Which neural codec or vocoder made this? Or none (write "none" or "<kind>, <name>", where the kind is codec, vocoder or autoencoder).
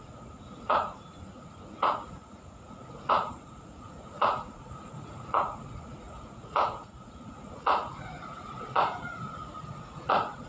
vocoder, Vocos